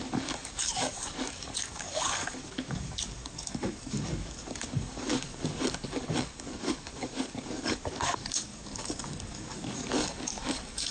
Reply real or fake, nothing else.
fake